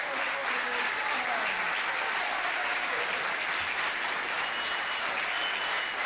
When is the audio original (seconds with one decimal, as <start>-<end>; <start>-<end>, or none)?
0.0-6.1